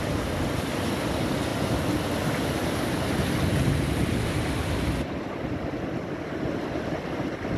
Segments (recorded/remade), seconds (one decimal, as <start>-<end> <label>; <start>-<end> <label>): 0.0-7.6 recorded